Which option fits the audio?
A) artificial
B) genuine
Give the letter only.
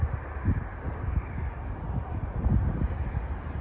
B